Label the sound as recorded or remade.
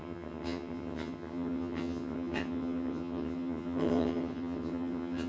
remade